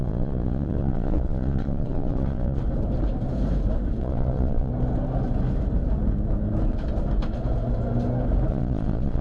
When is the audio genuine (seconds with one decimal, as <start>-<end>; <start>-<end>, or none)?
2.6-4.0; 4.7-8.5